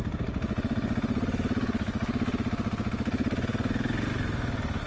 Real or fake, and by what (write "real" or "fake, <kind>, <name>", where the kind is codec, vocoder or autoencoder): real